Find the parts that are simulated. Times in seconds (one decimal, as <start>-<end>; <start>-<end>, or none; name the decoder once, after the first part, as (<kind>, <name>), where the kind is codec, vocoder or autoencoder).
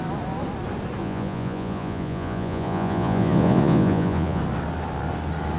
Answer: 1.0-4.4 (vocoder, Vocos)